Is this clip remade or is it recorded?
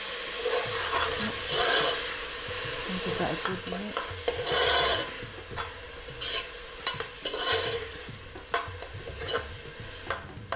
recorded